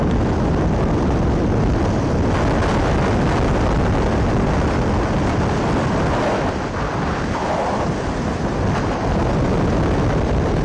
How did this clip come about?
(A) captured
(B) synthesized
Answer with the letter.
A